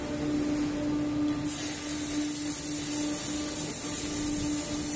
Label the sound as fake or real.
real